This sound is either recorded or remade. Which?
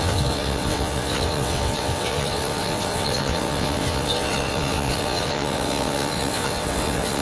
remade